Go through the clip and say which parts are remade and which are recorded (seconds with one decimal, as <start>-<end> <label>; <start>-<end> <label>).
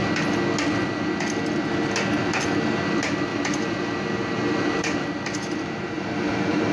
0.0-3.3 recorded; 3.3-6.7 remade